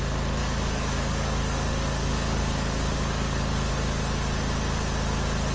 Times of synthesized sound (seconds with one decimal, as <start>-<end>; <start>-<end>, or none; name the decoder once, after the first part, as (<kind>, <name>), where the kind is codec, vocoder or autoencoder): 0.4-3.7 (codec, DAC)